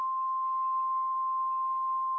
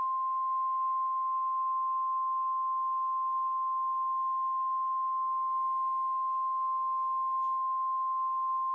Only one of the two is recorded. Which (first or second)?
second